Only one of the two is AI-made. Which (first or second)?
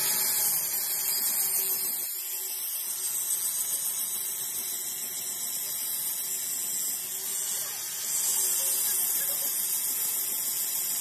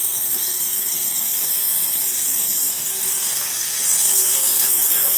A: second